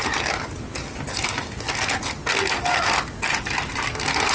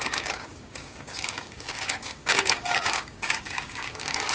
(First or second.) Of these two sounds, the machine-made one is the second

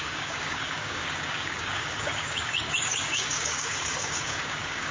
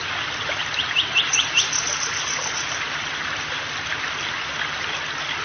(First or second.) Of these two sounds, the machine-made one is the first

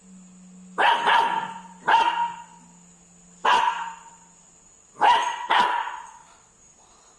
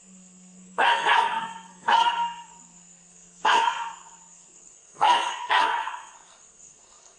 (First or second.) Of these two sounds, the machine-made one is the second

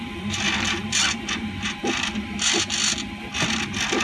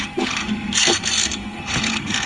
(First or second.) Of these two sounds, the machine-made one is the second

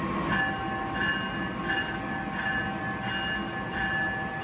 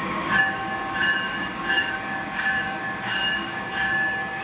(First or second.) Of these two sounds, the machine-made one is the second